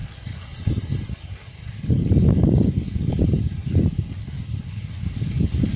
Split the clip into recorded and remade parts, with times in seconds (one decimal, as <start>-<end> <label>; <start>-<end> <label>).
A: 0.0-0.7 remade; 0.7-3.6 recorded; 3.6-4.9 remade; 4.9-5.8 recorded